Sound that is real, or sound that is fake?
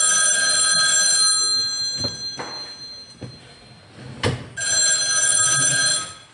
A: real